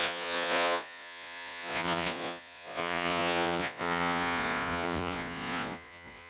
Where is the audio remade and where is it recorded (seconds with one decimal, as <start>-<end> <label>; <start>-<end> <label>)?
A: 0.0-6.3 remade